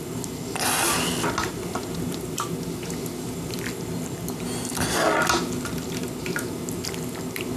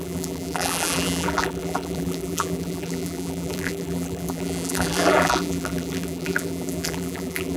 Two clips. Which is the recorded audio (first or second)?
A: first